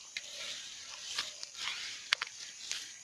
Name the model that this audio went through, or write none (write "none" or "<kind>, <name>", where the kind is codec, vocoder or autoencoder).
vocoder, BigVGAN v2